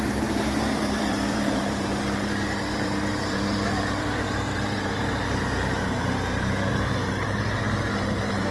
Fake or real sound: fake